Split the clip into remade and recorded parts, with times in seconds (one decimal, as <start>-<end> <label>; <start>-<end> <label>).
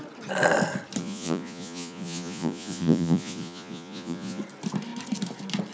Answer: 0.0-1.0 recorded; 1.0-4.4 remade; 4.4-5.7 recorded